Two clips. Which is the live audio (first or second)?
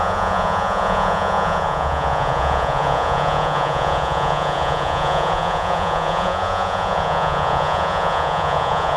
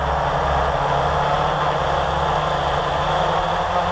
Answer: second